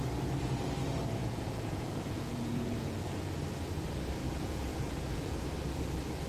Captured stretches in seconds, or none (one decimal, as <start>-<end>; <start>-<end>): 0.0-1.2; 3.4-4.2; 5.4-6.3